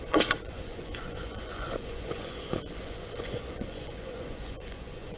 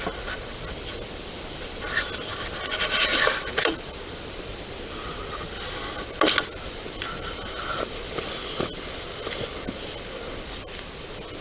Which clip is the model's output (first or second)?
first